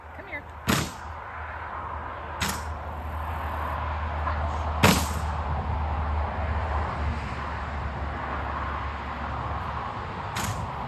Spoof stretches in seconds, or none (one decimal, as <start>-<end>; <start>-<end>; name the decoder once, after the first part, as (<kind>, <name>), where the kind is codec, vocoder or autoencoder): none